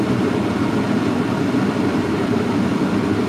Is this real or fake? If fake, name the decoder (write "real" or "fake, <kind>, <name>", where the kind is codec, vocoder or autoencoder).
real